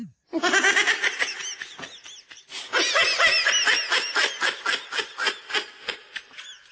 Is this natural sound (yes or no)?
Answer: yes